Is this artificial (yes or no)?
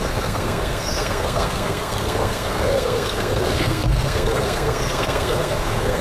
yes